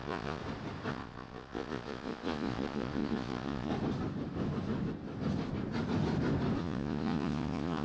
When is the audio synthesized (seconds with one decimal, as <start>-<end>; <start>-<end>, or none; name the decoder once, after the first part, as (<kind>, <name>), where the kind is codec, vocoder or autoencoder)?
0.0-0.4 (vocoder, Vocos); 0.9-3.7; 6.6-7.8